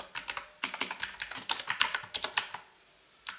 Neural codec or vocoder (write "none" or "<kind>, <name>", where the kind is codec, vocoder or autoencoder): none